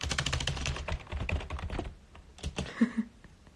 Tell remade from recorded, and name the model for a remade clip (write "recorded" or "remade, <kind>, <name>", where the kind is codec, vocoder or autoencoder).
remade, vocoder, BigVGAN v2